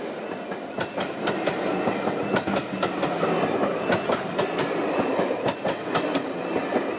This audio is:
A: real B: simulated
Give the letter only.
A